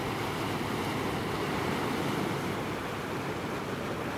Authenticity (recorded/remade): recorded